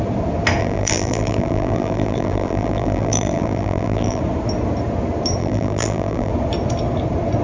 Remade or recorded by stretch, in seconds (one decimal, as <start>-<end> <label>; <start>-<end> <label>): 0.0-0.6 recorded; 0.6-4.2 remade; 4.2-5.4 recorded; 5.4-6.3 remade; 6.3-7.4 recorded